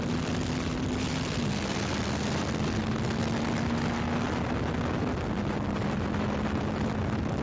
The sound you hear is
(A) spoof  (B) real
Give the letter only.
B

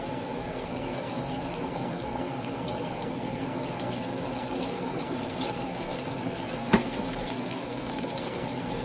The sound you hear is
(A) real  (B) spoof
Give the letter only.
B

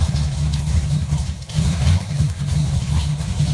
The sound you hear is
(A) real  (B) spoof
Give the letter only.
B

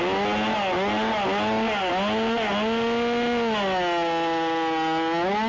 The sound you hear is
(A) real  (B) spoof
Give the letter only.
A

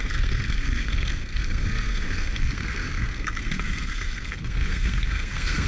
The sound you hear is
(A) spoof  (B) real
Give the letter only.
A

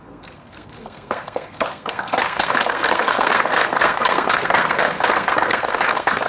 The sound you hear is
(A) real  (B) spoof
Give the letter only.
B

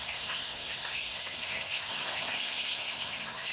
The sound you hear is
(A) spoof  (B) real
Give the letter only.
A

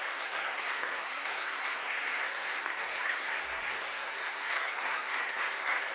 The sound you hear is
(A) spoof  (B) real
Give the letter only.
A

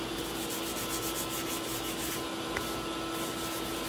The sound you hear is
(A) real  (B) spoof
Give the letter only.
A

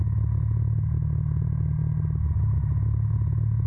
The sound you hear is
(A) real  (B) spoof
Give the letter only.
A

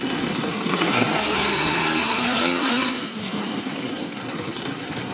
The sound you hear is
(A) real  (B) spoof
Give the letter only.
B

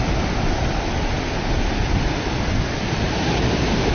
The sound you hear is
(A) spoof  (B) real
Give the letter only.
B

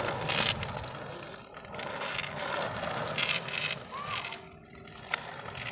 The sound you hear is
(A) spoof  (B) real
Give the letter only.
B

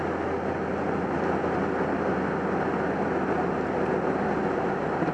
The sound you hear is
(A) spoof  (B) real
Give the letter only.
B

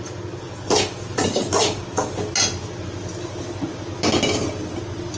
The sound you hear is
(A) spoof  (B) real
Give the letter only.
B